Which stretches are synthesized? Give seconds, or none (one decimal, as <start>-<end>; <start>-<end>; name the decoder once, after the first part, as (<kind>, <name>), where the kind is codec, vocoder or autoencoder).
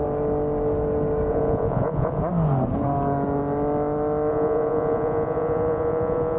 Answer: 1.3-2.2 (vocoder, Vocos); 4.3-6.4